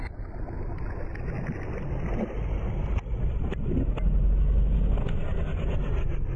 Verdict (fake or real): real